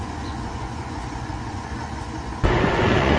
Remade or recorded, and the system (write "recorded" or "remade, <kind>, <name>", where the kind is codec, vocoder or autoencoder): remade, vocoder, Vocos